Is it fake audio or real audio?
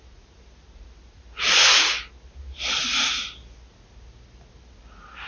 real